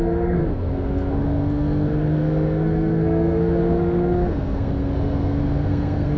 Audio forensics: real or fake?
fake